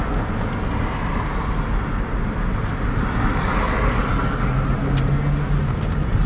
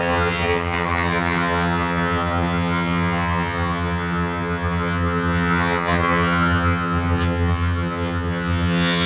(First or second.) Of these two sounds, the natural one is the first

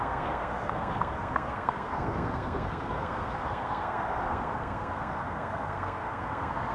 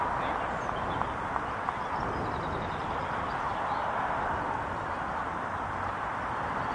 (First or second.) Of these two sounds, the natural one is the second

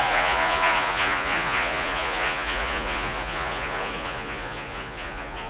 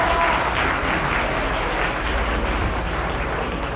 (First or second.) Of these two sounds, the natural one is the second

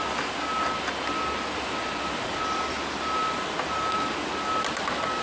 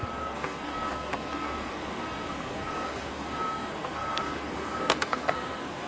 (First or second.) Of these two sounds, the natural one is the first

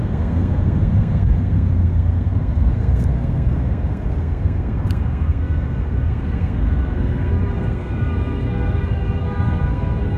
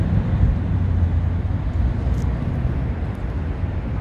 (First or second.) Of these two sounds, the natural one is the second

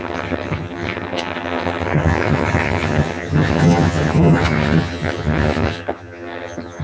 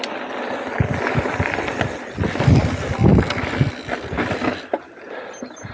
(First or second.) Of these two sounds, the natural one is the second